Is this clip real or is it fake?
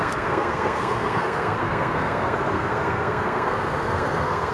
fake